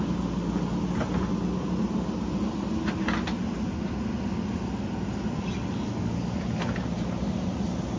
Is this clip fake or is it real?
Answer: real